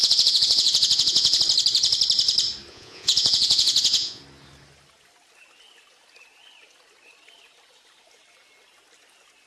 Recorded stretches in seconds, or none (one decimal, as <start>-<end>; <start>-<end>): 1.4-2.7; 4.2-9.5